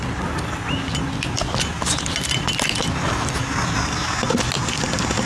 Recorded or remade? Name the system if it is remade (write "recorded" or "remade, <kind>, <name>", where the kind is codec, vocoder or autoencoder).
recorded